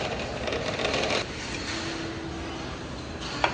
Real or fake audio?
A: real